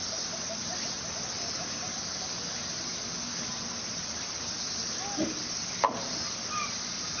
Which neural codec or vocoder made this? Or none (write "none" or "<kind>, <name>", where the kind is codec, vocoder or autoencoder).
none